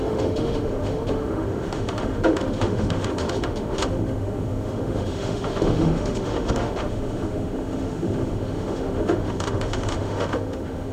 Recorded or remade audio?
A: remade